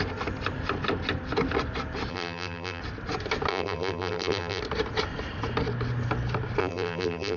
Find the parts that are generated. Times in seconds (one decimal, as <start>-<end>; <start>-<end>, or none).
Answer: 2.1-2.8; 3.5-4.6; 6.6-7.4